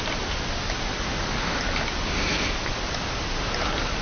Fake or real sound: real